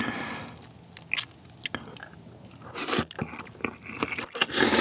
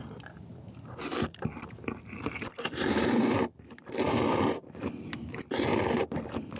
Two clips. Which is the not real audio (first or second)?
second